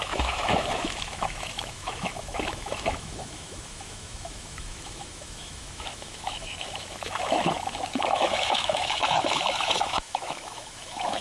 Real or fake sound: fake